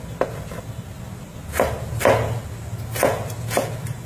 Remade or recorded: recorded